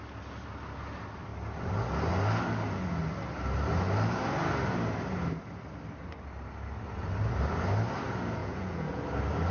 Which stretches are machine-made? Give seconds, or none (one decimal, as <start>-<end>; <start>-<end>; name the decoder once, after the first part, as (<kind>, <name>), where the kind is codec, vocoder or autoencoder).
8.4-9.0 (vocoder, Vocos)